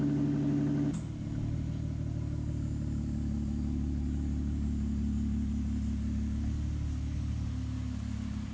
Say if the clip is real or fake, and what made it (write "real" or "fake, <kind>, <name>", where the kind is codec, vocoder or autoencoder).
real